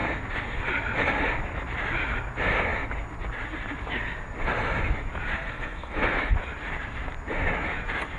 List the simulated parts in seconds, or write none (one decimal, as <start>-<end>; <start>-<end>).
5.3-6.2